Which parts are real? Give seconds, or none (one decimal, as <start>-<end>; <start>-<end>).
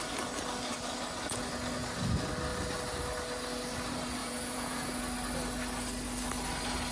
0.0-4.2; 5.0-6.9